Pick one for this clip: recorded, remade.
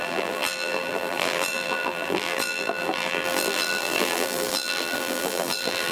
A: remade